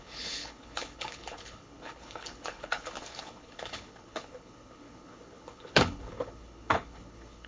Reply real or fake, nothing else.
fake